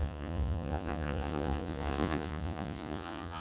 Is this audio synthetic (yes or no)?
yes